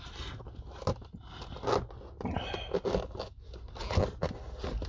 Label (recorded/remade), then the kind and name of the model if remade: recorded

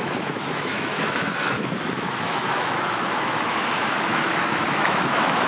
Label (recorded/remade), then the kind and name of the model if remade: remade, autoencoder, DAC-VAE